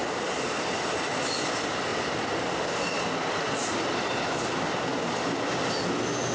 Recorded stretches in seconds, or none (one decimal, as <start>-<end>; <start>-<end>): 1.1-6.3